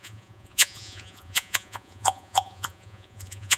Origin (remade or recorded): remade